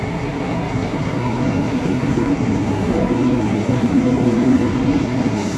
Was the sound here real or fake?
fake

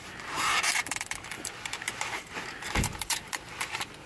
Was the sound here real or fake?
fake